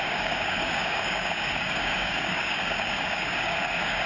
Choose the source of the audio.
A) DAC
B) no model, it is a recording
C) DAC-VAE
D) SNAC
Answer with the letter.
A